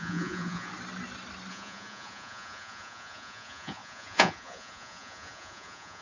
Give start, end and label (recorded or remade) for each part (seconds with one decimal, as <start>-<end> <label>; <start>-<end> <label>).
0.0-0.7 remade; 0.7-1.5 recorded; 1.5-6.0 remade